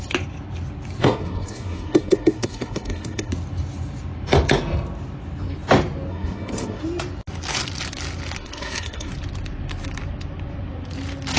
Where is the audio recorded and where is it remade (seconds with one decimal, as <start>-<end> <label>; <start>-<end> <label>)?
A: 0.0-1.0 recorded; 1.0-3.3 remade; 3.3-6.1 recorded; 6.1-6.8 remade; 6.8-8.4 recorded; 8.4-9.1 remade; 9.1-11.4 recorded